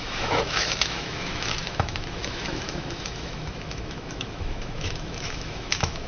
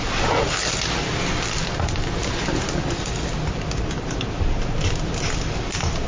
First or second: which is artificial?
first